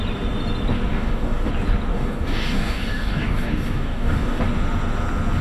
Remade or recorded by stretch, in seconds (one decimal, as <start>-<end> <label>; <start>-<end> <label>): 0.0-0.9 recorded; 0.9-1.5 remade; 1.5-1.9 recorded; 1.9-4.4 remade; 4.4-5.4 recorded